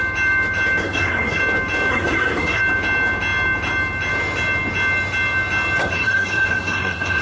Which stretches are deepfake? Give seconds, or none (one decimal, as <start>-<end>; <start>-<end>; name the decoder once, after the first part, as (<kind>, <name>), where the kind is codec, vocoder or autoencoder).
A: 0.8-1.4 (codec, SNAC); 1.9-2.6; 5.8-7.2